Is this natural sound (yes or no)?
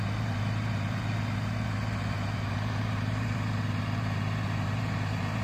no